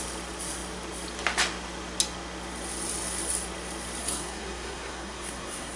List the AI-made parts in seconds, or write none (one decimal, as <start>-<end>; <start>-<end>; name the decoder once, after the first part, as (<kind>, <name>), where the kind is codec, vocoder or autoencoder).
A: 4.0-5.8 (codec, SNAC)